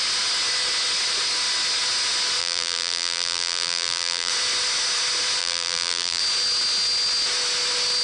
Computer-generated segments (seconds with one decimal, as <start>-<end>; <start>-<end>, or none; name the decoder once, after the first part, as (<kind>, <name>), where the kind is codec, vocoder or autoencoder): 2.4-4.3 (vocoder, BigVGAN v2); 5.4-6.2